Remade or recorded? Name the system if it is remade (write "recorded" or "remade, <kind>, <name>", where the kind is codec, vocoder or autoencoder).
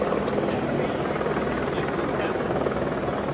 recorded